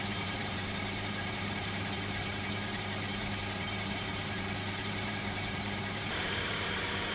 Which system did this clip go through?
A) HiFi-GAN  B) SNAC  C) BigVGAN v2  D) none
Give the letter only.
C